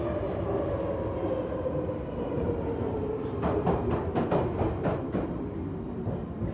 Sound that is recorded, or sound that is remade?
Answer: recorded